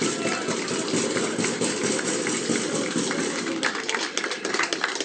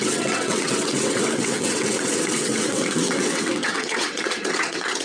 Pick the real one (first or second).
first